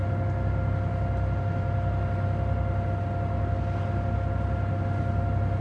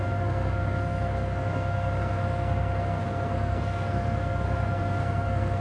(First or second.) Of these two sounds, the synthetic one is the second